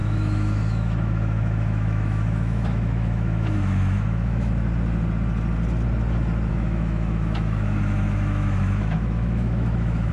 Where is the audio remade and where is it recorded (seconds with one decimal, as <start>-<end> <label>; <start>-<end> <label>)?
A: 0.0-4.5 remade; 4.5-6.5 recorded; 6.5-10.1 remade